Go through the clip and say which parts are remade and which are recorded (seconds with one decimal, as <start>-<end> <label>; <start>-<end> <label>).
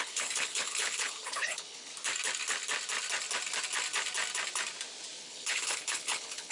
0.0-1.9 remade; 1.9-5.2 recorded; 5.2-6.5 remade